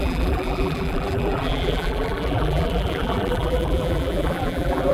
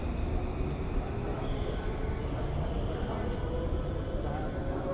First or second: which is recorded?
second